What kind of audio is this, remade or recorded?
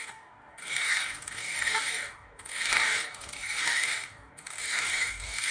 remade